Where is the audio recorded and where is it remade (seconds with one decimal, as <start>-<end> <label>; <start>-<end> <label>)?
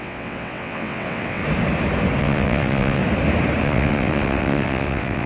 0.0-1.4 remade; 1.4-2.2 recorded; 2.2-3.0 remade; 3.0-3.6 recorded; 3.6-5.3 remade